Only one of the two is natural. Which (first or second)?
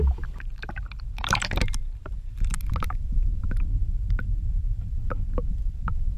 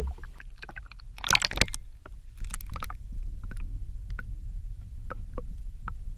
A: second